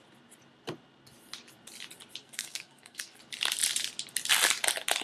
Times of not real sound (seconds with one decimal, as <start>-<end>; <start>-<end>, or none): 2.2-3.2